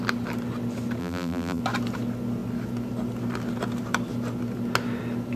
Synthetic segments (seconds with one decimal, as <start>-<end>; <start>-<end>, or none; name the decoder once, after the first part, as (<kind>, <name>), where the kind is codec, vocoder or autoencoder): 1.0-1.6 (vocoder, BigVGAN v2)